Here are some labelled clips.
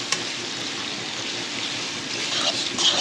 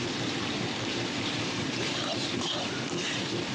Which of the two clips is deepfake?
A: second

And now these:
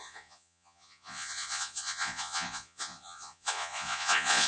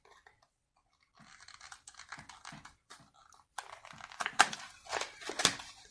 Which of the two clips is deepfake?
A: first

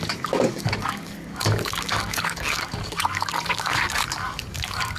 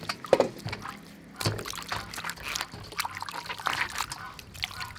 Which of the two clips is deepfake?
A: first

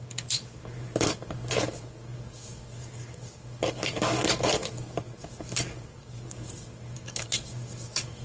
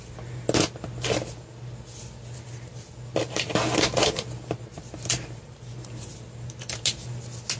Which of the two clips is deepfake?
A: first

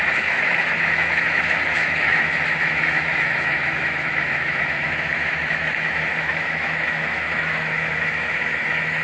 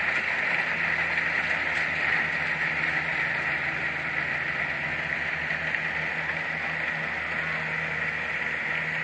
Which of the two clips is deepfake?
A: first